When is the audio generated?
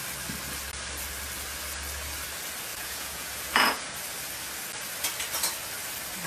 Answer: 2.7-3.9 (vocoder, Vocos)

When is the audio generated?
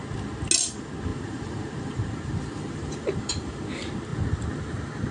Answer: 1.1-3.6 (vocoder, BigVGAN v2)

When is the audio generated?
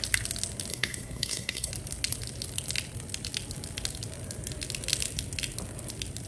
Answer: 0.7-1.7 (codec, SNAC)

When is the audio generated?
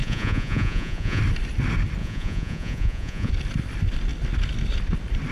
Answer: 0.0-1.2 (vocoder, Vocos); 2.0-3.3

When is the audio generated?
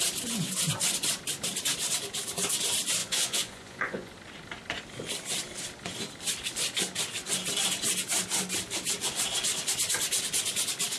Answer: 3.0-4.1 (vocoder, Vocos)